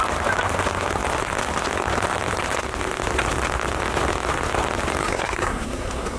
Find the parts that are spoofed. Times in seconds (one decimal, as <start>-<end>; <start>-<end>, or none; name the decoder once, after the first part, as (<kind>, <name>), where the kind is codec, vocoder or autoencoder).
5.0-6.2 (codec, SNAC)